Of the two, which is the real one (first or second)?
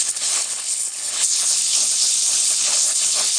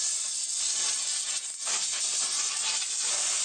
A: second